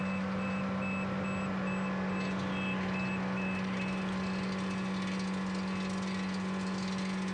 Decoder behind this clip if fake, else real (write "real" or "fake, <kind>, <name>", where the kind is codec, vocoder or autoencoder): real